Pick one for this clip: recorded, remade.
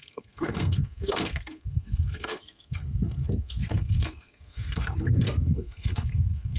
remade